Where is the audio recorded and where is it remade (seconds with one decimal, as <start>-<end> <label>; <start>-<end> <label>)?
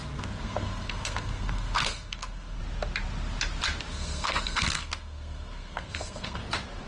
0.0-2.6 remade; 2.6-3.9 recorded; 3.9-6.4 remade; 6.4-6.9 recorded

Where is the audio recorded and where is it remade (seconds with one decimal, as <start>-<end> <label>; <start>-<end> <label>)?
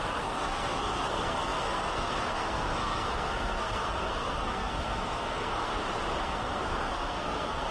0.0-5.7 remade; 5.7-6.2 recorded; 6.2-7.7 remade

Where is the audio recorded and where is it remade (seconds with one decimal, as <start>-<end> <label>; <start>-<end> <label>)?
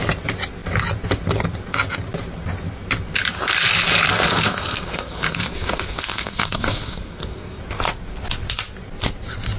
0.0-4.3 recorded; 4.3-7.6 remade; 7.6-9.6 recorded